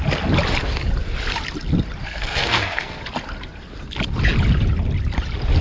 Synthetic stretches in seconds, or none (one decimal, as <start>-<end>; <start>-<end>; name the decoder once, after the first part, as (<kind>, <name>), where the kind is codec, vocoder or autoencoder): 2.0-3.0 (codec, SNAC)